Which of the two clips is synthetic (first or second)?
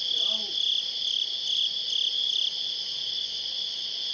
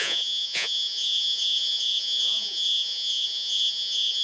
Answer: second